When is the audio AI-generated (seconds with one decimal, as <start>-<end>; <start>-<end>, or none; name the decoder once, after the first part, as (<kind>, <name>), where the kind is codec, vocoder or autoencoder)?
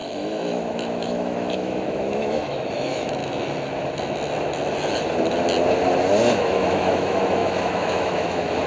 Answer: 0.0-3.2 (autoencoder, DAC-VAE); 6.3-8.7